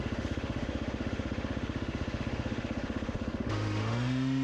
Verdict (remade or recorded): remade